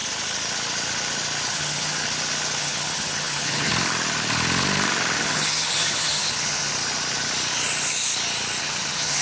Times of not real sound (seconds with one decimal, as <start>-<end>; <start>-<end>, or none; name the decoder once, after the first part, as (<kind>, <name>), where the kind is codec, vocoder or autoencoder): 1.5-2.0 (vocoder, HiFi-GAN); 2.6-3.7; 5.2-6.7; 8.6-9.2